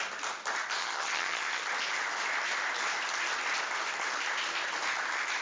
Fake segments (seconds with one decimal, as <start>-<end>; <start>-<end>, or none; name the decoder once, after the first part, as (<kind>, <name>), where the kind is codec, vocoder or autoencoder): 0.8-1.6 (vocoder, HiFi-GAN)